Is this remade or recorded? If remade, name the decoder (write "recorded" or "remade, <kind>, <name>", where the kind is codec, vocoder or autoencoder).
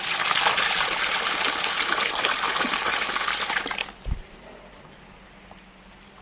recorded